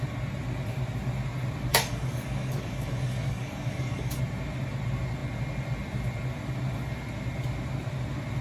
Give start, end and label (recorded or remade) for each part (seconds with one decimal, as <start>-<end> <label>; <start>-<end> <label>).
0.0-1.7 recorded; 1.7-4.2 remade; 4.2-8.4 recorded